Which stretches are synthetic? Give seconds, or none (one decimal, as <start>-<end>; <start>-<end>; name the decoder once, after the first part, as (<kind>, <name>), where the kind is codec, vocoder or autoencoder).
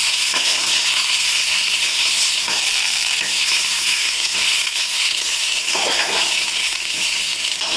0.0-2.6 (codec, SNAC); 3.2-7.8